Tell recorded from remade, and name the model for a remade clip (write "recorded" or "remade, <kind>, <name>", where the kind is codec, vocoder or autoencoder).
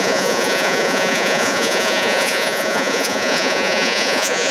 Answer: remade, vocoder, Vocos